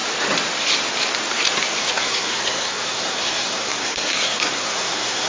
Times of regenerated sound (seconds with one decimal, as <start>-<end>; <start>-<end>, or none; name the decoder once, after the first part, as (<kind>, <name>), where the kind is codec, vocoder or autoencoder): 1.8-5.3 (codec, SNAC)